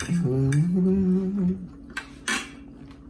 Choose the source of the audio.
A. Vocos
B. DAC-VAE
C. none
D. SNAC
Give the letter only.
C